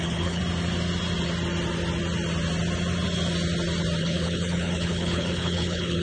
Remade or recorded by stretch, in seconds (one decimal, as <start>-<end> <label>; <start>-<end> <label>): 0.0-0.4 remade; 0.4-4.0 recorded; 4.0-6.0 remade